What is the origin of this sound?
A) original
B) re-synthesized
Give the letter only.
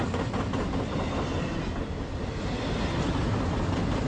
A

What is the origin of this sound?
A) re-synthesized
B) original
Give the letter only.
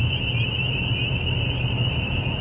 B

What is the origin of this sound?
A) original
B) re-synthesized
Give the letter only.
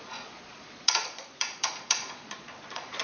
B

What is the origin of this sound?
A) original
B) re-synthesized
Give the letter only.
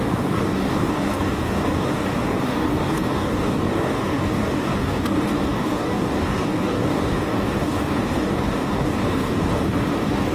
B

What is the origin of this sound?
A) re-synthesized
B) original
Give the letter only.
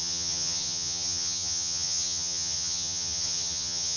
A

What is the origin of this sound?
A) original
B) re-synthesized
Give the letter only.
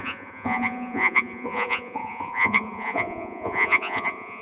B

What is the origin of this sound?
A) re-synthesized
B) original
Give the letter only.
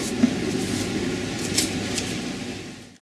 B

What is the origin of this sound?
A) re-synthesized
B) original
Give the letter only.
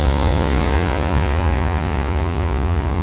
A